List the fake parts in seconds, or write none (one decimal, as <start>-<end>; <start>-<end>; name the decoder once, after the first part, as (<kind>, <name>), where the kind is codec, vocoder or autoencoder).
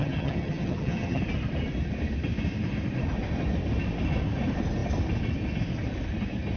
0.0-1.2 (vocoder, HiFi-GAN)